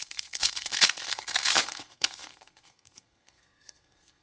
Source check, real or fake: fake